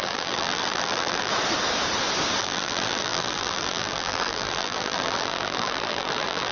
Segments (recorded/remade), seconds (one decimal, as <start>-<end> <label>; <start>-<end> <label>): 0.0-1.3 remade; 1.3-2.4 recorded; 2.4-6.5 remade